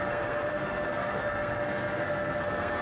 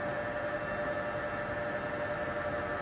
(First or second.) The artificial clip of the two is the first